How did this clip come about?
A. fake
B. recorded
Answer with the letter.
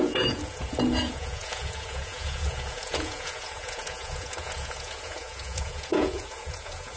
A